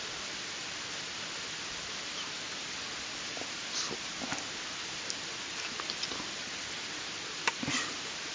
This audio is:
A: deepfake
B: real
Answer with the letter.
B